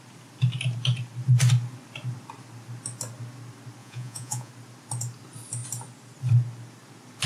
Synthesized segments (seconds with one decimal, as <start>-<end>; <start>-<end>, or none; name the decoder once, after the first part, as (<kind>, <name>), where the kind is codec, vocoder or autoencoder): 3.8-4.5 (vocoder, Vocos)